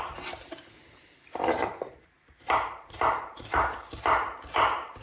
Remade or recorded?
remade